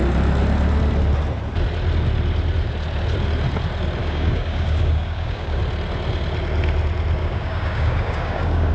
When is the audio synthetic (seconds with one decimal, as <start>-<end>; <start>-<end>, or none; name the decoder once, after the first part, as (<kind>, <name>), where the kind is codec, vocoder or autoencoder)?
4.0-5.6 (codec, DAC); 7.2-8.7